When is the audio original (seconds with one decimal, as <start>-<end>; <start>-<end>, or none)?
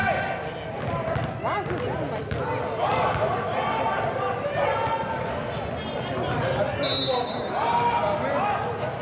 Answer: 0.0-9.0